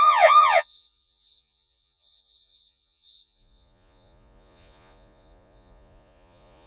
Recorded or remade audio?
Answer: remade